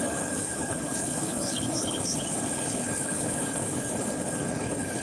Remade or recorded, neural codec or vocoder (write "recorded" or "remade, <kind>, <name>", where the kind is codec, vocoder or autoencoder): remade, codec, HILCodec